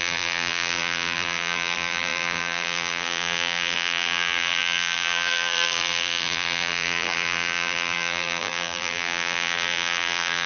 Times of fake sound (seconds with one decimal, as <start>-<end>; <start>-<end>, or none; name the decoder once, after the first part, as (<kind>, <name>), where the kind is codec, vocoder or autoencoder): 0.0-10.5 (vocoder, BigVGAN v2)